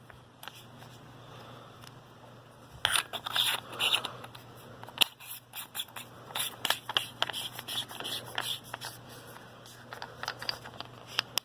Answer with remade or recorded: recorded